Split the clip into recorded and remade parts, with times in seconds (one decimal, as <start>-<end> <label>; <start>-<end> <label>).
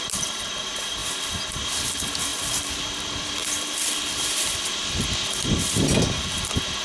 0.0-2.3 recorded; 2.3-4.9 remade; 4.9-6.8 recorded